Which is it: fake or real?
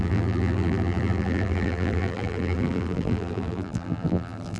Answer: fake